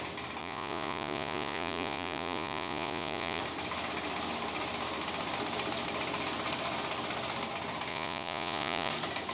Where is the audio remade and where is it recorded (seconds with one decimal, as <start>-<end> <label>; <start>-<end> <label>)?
0.0-0.4 recorded; 0.4-3.4 remade; 3.4-7.9 recorded; 7.9-8.9 remade; 8.9-9.3 recorded